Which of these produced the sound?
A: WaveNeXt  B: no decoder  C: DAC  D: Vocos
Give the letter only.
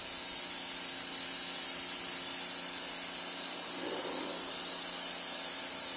B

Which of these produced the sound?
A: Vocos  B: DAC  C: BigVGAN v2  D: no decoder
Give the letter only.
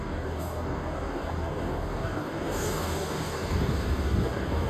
B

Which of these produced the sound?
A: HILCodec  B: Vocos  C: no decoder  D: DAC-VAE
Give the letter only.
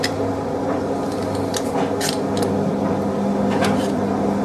C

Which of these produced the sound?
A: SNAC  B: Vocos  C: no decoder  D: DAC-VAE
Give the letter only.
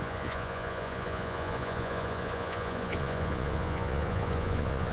B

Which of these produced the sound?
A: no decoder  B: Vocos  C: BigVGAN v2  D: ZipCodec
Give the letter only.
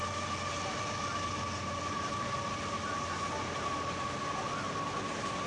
A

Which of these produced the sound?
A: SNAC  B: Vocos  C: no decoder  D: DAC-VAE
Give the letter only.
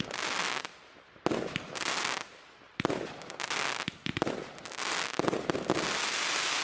C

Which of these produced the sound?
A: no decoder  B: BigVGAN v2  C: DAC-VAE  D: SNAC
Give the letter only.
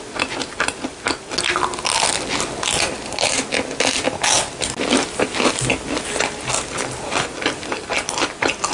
A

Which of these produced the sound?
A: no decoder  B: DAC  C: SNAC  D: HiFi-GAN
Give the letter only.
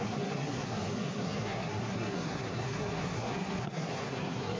C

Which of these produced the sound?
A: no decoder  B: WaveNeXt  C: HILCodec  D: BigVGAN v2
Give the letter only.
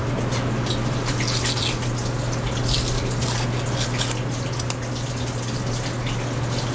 A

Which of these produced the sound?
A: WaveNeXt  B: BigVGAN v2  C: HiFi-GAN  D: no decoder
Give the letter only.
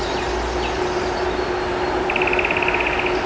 D